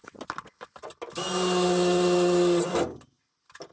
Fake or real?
real